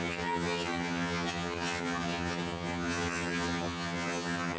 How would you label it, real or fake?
fake